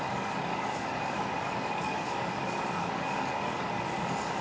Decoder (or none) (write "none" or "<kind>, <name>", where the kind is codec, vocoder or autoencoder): codec, DAC